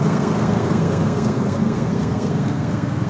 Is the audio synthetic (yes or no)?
yes